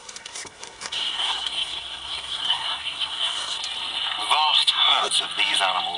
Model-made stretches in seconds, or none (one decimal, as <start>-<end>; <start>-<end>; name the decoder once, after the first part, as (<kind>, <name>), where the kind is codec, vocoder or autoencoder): 0.0-3.6 (codec, SNAC); 4.6-5.1